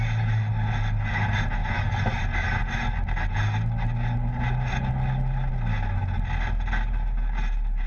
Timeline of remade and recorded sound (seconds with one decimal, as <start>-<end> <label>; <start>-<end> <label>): 0.0-7.9 recorded